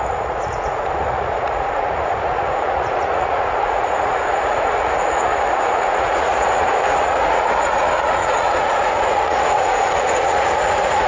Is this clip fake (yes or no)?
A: yes